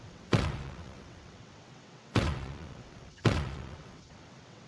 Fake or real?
fake